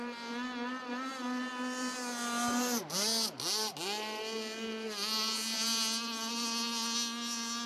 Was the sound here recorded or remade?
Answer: recorded